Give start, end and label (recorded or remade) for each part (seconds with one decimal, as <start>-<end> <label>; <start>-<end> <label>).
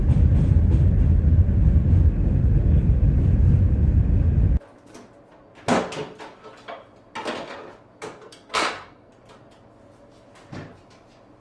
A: 0.0-8.2 recorded; 8.2-9.1 remade; 9.1-11.4 recorded